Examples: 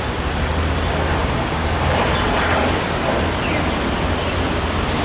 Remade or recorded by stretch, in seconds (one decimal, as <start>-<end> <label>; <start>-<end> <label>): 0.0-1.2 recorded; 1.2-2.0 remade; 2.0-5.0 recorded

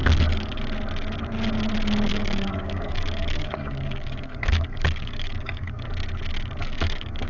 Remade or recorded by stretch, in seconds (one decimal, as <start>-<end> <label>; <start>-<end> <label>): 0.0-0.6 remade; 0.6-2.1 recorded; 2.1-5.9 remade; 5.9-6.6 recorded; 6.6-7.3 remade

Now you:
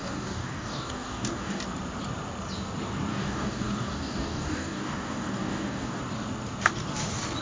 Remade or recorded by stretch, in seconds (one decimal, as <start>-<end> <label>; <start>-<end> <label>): 0.0-1.6 remade; 1.6-3.1 recorded; 3.1-6.0 remade; 6.0-7.4 recorded

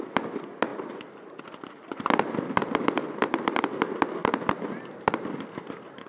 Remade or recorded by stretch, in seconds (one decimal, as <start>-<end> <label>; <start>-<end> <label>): 0.0-6.1 recorded

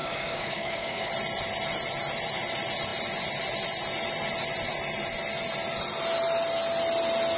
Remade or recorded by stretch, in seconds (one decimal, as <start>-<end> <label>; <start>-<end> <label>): 0.0-1.1 remade; 1.1-7.4 recorded